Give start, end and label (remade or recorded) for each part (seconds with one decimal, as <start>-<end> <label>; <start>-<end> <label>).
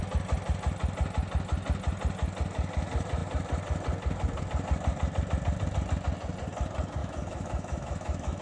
0.0-7.0 recorded; 7.0-8.4 remade